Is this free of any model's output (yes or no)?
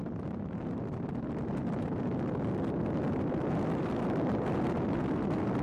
yes